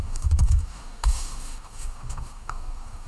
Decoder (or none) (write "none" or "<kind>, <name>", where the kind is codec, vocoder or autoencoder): codec, DAC